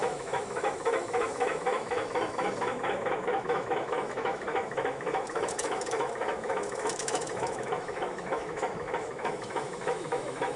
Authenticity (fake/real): fake